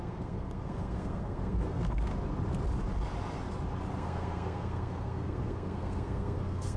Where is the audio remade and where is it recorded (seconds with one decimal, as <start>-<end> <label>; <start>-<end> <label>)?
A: 0.0-2.1 remade; 2.1-4.0 recorded; 4.0-6.8 remade